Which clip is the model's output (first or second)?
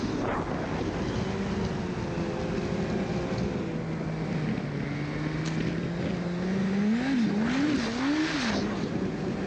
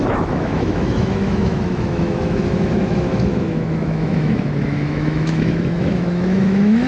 second